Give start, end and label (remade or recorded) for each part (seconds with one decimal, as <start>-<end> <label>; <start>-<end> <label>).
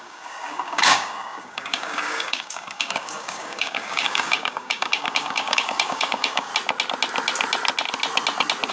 0.0-6.5 remade; 6.5-8.7 recorded